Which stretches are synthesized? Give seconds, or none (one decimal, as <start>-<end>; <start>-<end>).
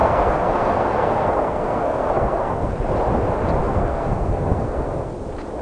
0.0-2.7; 3.6-5.1